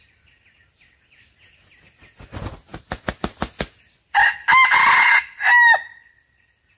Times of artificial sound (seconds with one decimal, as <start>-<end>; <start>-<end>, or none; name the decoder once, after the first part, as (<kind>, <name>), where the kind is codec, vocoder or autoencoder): none